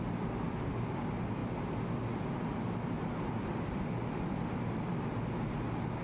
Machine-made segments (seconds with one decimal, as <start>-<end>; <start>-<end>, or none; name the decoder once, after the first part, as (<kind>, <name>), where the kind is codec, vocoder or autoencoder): none